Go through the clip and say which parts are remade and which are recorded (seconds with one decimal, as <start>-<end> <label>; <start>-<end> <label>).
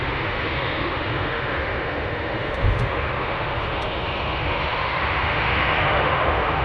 0.0-6.6 remade